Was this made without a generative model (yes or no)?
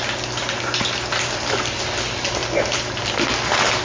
yes